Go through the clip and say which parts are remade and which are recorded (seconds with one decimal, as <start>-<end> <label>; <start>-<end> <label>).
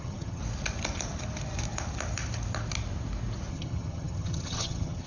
0.0-0.4 remade; 0.4-3.5 recorded; 3.5-5.1 remade